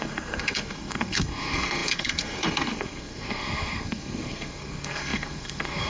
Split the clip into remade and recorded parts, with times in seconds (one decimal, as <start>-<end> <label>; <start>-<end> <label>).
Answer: 0.0-5.9 remade